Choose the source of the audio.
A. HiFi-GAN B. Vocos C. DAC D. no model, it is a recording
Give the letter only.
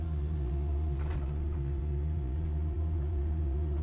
B